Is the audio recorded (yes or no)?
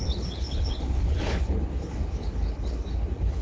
no